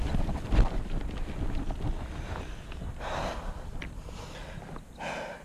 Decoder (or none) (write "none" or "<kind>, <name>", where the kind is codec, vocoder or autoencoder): none